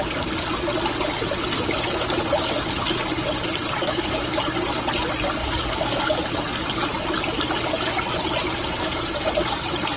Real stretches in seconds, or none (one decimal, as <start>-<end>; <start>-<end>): 0.0-3.8; 4.4-5.4; 6.2-10.0